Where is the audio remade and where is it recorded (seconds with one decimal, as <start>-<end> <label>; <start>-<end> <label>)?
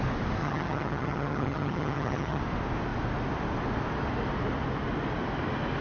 0.0-0.4 recorded; 0.4-2.4 remade; 2.4-5.8 recorded